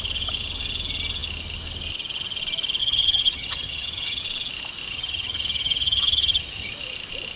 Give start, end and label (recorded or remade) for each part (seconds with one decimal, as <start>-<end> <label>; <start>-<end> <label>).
0.0-2.8 recorded; 2.8-4.2 remade; 4.2-4.9 recorded; 4.9-6.7 remade; 6.7-7.4 recorded